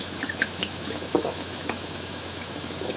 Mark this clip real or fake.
fake